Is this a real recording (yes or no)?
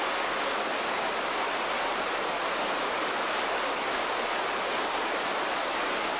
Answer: yes